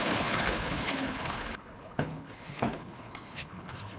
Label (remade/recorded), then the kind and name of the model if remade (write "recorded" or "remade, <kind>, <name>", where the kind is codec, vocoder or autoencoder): remade, codec, HILCodec